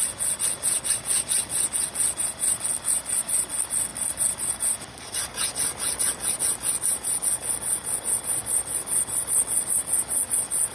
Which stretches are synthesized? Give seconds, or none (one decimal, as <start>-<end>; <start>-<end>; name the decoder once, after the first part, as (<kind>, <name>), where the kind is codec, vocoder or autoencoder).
none